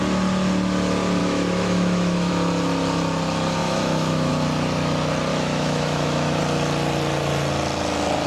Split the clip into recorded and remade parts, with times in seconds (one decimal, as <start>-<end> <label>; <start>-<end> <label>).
0.0-1.2 recorded; 1.2-2.3 remade; 2.3-3.6 recorded; 3.6-4.3 remade; 4.3-5.3 recorded; 5.3-6.4 remade; 6.4-8.3 recorded